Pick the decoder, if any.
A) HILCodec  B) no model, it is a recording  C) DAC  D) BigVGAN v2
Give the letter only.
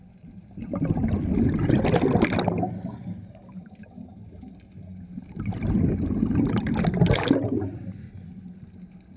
B